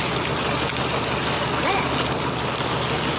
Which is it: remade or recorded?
recorded